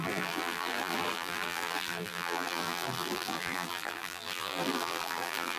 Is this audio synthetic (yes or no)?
yes